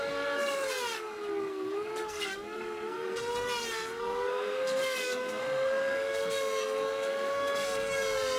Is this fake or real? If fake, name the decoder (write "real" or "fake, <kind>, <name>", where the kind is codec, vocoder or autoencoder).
fake, codec, SNAC